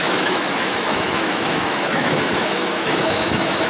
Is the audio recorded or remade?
remade